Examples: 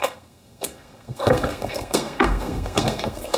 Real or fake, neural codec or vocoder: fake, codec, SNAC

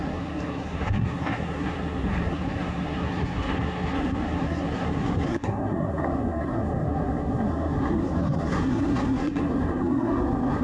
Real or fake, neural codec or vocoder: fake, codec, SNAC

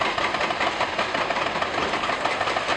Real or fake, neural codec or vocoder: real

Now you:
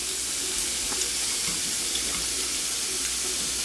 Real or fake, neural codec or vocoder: real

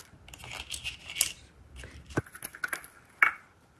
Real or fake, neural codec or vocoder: real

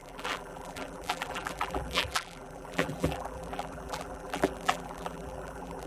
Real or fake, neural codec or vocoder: fake, vocoder, BigVGAN v2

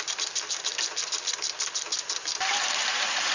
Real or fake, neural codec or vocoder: real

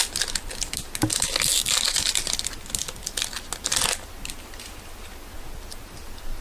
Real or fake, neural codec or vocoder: real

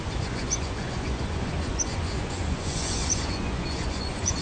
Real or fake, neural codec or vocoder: fake, vocoder, Vocos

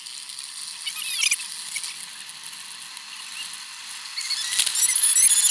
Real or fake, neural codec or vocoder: real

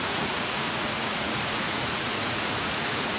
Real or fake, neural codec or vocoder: fake, vocoder, Vocos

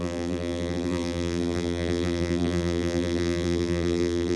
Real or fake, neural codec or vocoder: fake, vocoder, BigVGAN v2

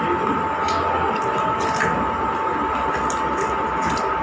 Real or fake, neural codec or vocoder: real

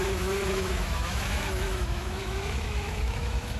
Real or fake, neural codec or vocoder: fake, autoencoder, DAC-VAE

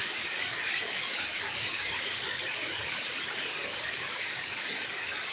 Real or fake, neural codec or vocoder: fake, codec, DAC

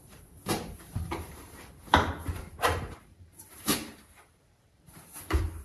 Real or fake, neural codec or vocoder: fake, vocoder, BigVGAN v2